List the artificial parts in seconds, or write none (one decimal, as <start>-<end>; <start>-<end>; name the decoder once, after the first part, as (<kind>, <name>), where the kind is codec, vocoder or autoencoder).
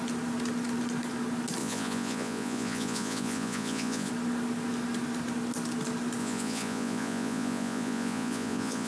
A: 1.6-4.1 (vocoder, Vocos); 6.2-8.9